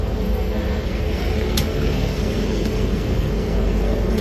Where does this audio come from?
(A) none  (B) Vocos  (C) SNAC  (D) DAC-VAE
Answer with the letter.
C